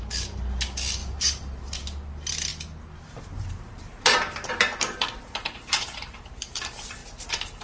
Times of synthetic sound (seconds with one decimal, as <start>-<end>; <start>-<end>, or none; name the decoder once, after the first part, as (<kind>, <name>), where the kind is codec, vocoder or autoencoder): 1.0-1.8 (vocoder, BigVGAN v2); 3.9-6.6